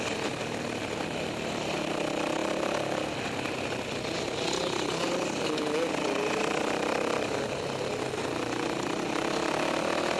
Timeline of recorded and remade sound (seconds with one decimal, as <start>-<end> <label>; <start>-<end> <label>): 0.0-10.2 recorded